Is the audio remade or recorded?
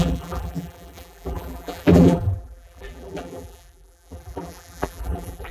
remade